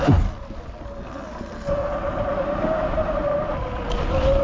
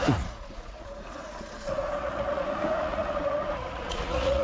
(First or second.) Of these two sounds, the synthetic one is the second